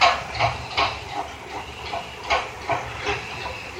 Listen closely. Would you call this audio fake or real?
real